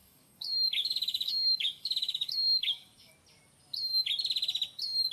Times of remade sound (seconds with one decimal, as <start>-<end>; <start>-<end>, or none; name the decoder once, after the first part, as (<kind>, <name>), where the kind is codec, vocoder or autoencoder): 0.0-3.1 (codec, DAC)